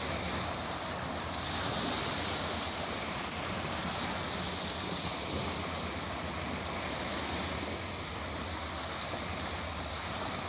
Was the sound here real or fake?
real